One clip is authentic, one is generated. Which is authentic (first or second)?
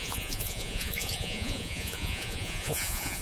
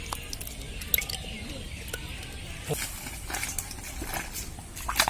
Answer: second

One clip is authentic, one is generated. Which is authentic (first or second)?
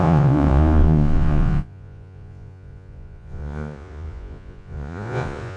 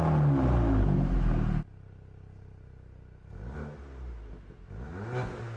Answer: second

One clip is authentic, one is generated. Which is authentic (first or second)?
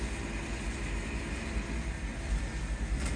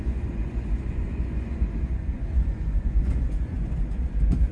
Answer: first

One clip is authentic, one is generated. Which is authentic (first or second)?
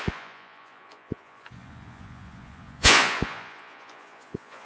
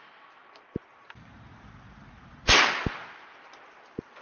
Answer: second